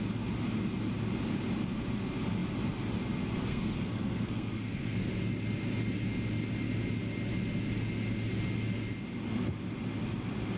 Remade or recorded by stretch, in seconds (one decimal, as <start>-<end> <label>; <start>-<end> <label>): 0.0-3.5 recorded; 3.5-5.1 remade; 5.1-10.6 recorded